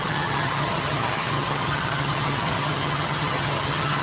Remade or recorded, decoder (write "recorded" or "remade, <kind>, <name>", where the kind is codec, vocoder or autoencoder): remade, vocoder, HiFi-GAN